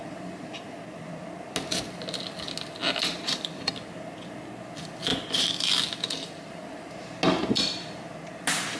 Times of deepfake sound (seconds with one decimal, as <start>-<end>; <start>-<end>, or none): 2.8-3.7